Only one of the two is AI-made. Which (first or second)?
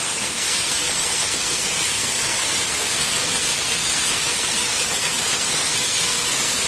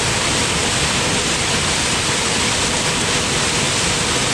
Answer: first